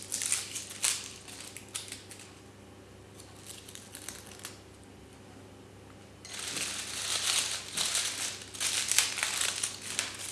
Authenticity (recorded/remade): recorded